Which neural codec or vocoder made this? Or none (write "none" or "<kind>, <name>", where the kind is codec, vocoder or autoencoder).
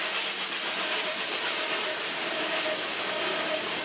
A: none